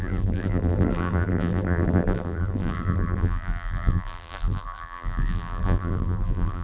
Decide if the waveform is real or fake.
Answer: fake